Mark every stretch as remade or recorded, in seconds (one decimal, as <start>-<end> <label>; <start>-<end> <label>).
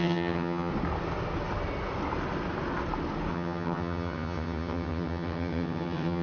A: 0.0-0.7 remade; 0.7-3.3 recorded; 3.3-6.2 remade